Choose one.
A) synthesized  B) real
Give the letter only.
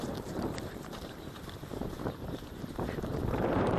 A